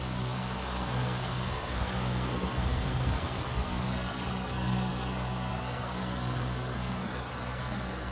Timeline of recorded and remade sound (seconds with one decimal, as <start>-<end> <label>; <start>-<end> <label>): 0.0-8.1 remade